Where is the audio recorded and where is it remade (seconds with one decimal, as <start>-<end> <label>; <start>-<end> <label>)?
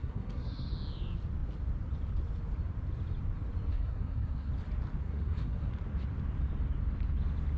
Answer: 0.0-0.7 remade; 0.7-3.7 recorded; 3.7-4.5 remade; 4.5-5.0 recorded; 5.0-5.7 remade; 5.7-7.6 recorded